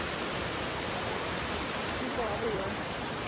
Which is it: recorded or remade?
remade